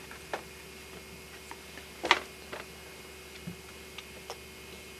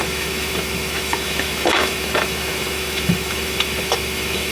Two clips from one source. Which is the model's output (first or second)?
second